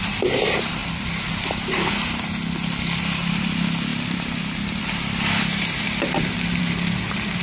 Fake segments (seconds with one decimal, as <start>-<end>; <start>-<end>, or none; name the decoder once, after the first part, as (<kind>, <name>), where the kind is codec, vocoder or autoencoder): 0.8-1.3 (vocoder, BigVGAN v2); 3.9-6.6